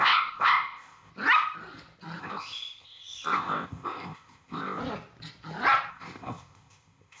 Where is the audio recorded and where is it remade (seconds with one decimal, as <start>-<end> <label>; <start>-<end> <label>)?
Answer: 0.0-1.1 remade; 1.1-2.2 recorded; 2.2-4.8 remade; 4.8-5.9 recorded; 5.9-7.2 remade